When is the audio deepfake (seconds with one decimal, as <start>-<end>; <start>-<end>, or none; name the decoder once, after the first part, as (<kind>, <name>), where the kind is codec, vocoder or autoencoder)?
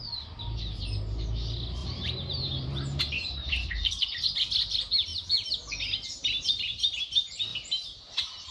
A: 1.8-3.9 (vocoder, BigVGAN v2)